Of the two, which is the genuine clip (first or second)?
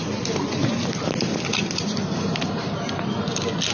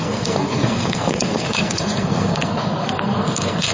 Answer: first